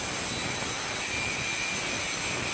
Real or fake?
real